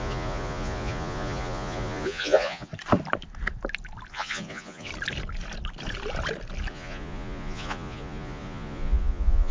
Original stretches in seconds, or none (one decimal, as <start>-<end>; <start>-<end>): 2.7-4.1; 4.9-6.7